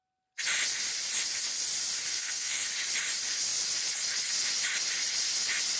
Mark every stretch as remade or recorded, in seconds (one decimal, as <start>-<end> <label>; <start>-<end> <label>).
0.0-2.1 recorded; 2.1-2.7 remade; 2.7-5.8 recorded